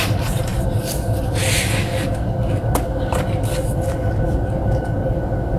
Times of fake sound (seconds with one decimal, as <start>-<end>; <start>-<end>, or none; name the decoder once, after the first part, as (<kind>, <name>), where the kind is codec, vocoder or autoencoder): 1.8-5.6 (codec, DAC)